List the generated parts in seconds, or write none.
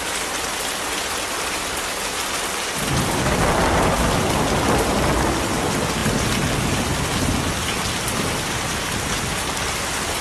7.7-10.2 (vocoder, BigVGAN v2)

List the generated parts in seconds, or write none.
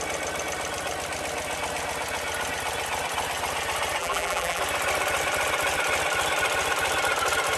4.0-4.6 (vocoder, BigVGAN v2)